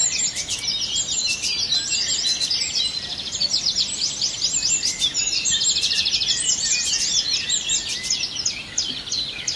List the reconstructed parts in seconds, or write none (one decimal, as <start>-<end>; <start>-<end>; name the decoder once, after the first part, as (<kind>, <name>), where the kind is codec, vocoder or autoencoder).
none